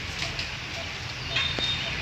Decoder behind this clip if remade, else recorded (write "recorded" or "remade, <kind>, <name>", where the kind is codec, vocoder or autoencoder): recorded